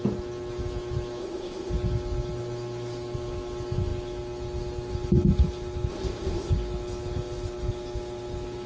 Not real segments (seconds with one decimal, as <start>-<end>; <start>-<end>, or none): 1.2-1.7; 5.9-6.5